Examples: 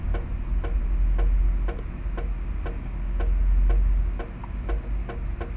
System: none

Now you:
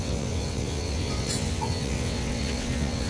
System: vocoder, WaveNeXt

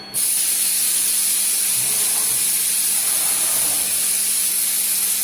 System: none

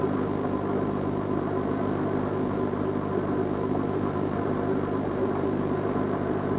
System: none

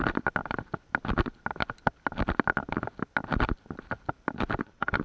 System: none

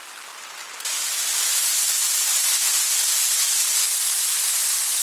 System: none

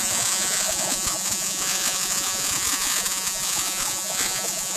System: vocoder, Vocos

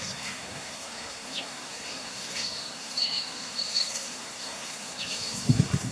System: codec, SNAC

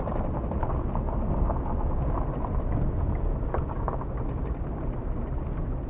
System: none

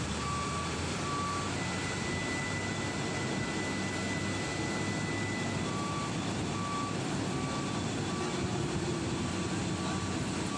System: none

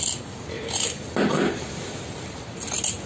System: none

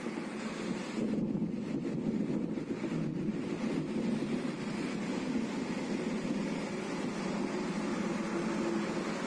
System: none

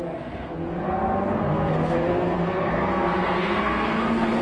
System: codec, SNAC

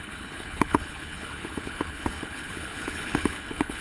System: codec, HILCodec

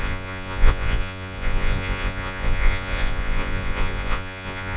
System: vocoder, Vocos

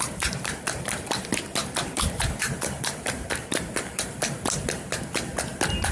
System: vocoder, BigVGAN v2